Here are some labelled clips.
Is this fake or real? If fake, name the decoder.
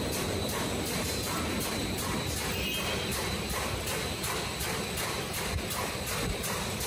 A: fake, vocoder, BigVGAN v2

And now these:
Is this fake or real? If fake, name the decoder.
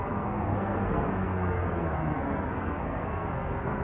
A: fake, codec, SNAC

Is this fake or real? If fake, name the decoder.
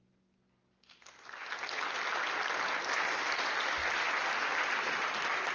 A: real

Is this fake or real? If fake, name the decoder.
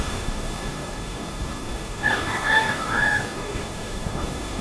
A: fake, codec, DAC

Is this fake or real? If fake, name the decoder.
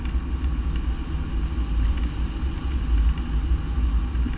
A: real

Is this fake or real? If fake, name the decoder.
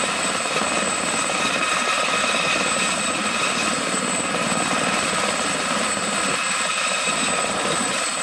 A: real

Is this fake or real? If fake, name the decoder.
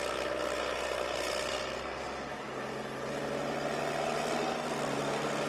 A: real